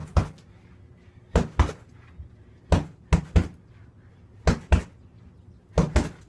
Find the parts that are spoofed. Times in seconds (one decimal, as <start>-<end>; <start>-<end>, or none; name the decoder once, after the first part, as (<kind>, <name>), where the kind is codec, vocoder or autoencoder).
none